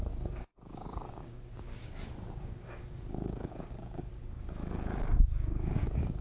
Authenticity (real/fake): fake